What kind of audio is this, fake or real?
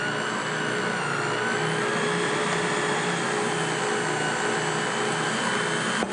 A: real